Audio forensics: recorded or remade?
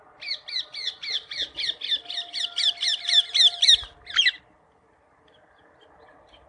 recorded